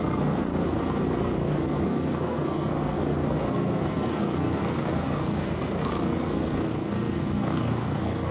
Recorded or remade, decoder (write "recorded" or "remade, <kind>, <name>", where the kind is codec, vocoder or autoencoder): remade, codec, SNAC